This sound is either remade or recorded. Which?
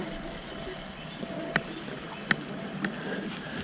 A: recorded